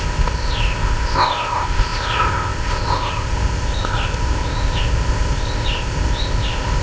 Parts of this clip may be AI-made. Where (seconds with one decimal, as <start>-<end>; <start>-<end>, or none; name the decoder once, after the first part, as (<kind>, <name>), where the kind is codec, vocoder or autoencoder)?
0.0-6.8 (codec, ZipCodec)